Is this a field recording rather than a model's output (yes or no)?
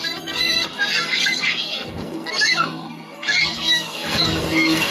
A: no